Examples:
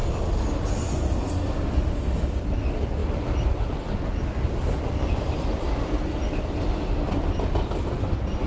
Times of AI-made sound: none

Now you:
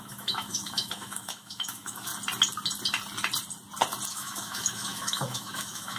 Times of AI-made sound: 0.0-2.1 (autoencoder, DAC-VAE); 4.1-6.0

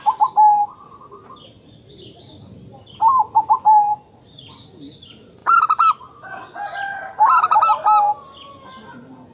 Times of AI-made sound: none

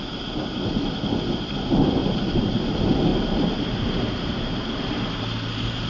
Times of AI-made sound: 2.0-2.6 (vocoder, BigVGAN v2); 3.1-4.9

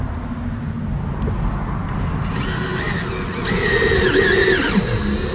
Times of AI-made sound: none

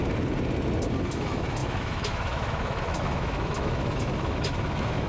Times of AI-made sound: 1.1-5.1 (autoencoder, DAC-VAE)

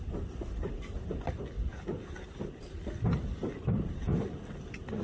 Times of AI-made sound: none